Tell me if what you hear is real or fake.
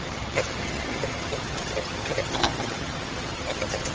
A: fake